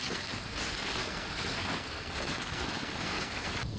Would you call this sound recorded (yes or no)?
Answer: no